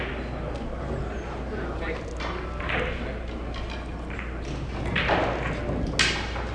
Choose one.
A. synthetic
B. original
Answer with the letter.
B